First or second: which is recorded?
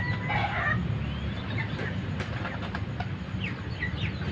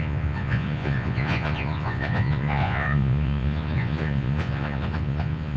first